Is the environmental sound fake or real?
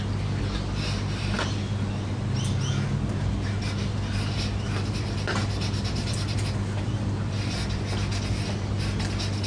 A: real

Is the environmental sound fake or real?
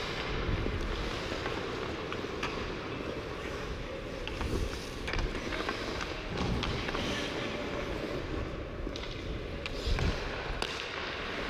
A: real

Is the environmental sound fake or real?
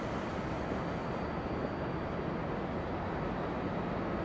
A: real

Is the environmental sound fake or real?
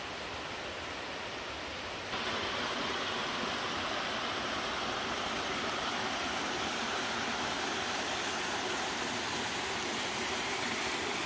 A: real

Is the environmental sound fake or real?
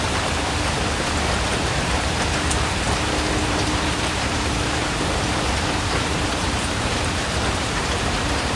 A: fake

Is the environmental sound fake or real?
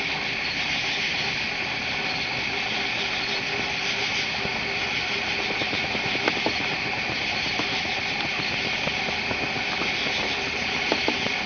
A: real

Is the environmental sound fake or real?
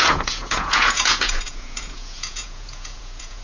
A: fake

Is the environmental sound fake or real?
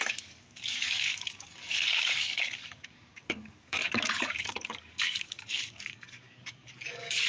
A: fake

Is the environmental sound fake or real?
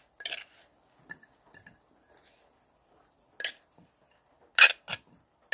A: real